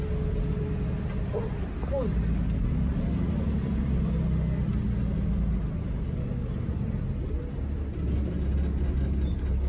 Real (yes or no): yes